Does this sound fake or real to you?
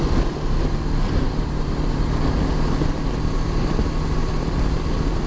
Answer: real